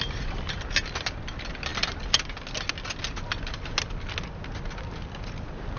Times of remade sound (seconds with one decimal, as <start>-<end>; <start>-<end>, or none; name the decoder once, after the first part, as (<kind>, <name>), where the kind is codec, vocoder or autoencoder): none